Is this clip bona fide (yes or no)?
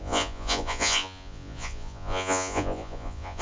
no